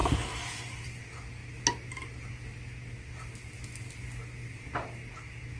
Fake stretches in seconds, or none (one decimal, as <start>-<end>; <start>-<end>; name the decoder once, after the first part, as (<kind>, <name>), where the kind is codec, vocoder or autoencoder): none

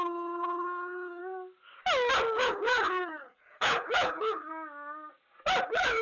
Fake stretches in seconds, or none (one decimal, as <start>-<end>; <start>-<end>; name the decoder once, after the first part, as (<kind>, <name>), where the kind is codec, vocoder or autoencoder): 0.0-1.2 (codec, HILCodec); 2.4-4.5; 5.6-6.0

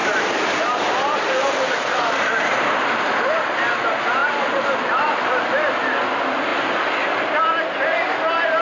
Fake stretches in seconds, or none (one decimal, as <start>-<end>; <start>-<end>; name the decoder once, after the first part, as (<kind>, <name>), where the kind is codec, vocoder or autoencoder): 0.0-3.3 (vocoder, BigVGAN v2); 6.5-7.1

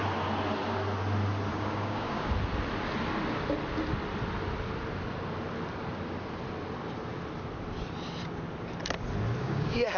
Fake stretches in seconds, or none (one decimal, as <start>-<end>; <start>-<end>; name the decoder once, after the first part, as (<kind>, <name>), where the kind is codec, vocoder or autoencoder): 1.5-2.3 (codec, DAC); 9.4-10.0